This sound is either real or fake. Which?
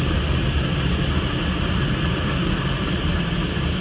real